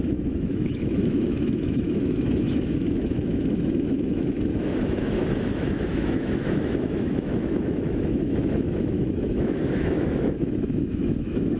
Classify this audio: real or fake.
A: fake